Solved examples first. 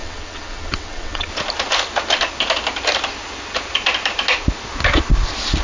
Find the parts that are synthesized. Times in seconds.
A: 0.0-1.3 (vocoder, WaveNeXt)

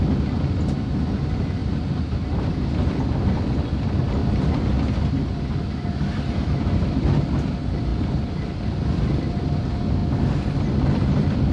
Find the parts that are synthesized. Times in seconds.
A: none

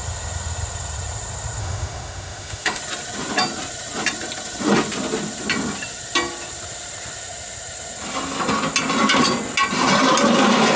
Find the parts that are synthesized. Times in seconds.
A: 1.6-2.8 (autoencoder, DAC-VAE)

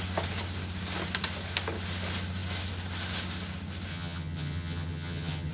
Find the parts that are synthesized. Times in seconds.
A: 3.9-5.5 (vocoder, HiFi-GAN)

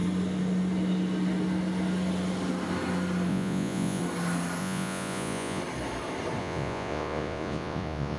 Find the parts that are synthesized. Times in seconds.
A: 3.3-4.0 (vocoder, Vocos); 4.6-5.6; 6.4-8.2

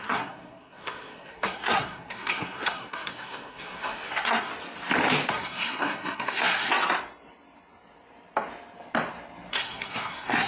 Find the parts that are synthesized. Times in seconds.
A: 0.0-4.5 (codec, SNAC); 5.3-6.7; 9.5-10.5

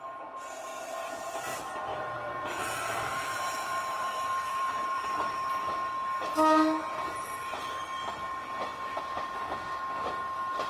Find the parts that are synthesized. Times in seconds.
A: 1.9-5.5 (vocoder, BigVGAN v2)

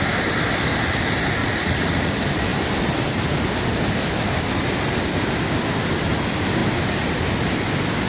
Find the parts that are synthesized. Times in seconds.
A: 1.4-2.1 (vocoder, Vocos)